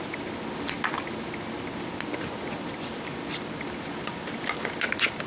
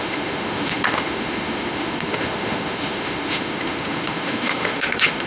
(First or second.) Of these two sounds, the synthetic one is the second